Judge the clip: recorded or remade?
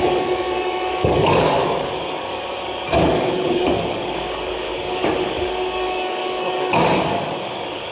remade